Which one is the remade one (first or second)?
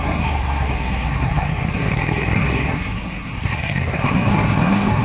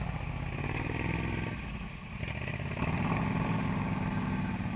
first